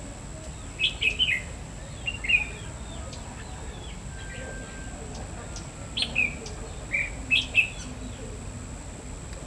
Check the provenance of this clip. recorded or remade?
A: recorded